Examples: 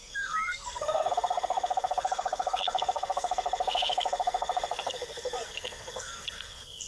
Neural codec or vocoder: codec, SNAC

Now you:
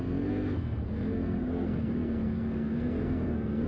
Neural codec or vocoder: codec, SNAC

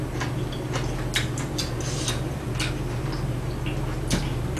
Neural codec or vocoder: none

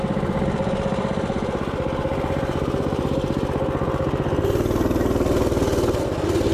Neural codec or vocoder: none